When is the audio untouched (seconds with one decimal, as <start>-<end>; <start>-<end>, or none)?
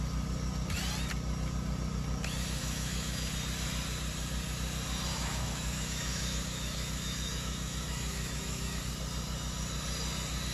0.0-2.6; 3.3-5.1; 8.8-10.5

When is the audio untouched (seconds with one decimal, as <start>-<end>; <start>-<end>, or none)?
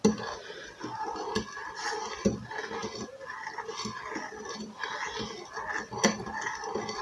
0.0-7.0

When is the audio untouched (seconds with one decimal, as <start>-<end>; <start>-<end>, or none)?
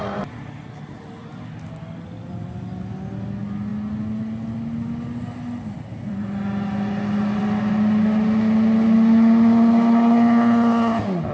0.0-11.3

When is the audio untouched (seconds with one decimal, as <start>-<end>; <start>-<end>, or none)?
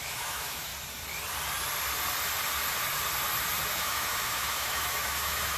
0.7-3.7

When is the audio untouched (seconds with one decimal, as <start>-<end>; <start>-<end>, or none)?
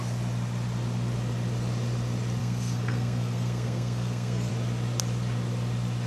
0.0-2.4; 4.5-6.1